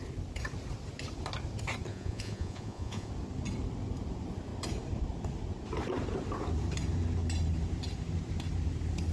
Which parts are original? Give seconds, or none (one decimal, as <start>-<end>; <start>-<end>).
0.0-1.9; 3.1-9.1